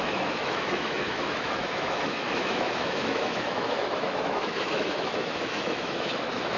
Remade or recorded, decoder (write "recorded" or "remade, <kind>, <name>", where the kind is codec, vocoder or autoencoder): remade, autoencoder, DAC-VAE